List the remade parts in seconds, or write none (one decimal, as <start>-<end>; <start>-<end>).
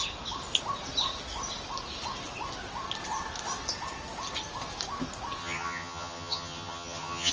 5.4-7.3